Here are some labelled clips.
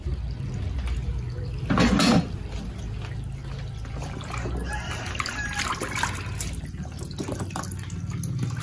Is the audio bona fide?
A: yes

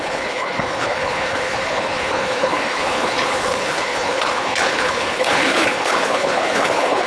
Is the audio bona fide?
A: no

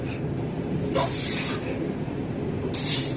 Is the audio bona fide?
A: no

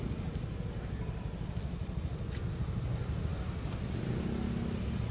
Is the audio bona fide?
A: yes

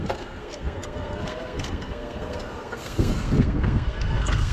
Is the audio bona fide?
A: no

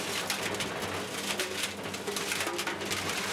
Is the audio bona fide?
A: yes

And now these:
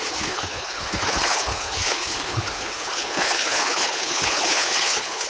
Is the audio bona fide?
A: no